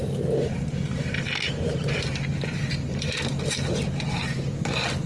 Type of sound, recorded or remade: remade